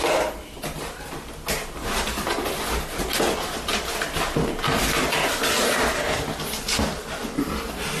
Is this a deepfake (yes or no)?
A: no